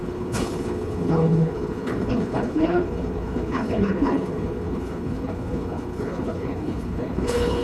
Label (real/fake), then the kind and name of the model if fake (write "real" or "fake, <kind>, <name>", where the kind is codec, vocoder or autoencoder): fake, codec, HILCodec